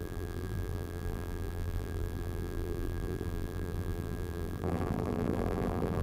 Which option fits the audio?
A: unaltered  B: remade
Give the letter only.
B